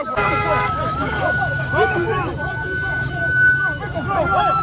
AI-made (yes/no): yes